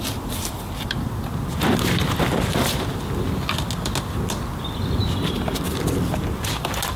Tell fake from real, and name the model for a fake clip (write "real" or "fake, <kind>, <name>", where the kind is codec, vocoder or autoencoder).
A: real